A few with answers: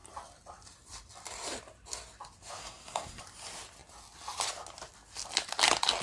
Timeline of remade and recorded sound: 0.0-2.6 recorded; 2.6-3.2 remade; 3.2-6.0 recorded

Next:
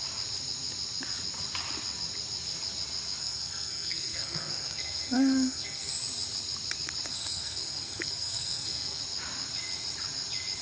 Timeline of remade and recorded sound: 0.0-3.2 recorded; 3.2-6.0 remade; 6.0-7.1 recorded; 7.1-9.0 remade; 9.0-10.6 recorded

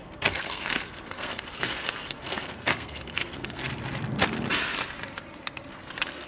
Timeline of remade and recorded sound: 0.0-3.6 remade; 3.6-5.7 recorded; 5.7-6.3 remade

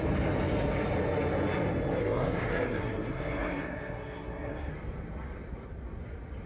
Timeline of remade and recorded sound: 0.0-2.0 recorded; 2.0-4.7 remade; 4.7-6.5 recorded